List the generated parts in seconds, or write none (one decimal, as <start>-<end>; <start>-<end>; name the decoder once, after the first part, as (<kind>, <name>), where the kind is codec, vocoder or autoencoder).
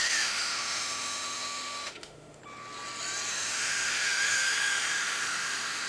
0.0-2.4 (autoencoder, DAC-VAE); 3.3-5.9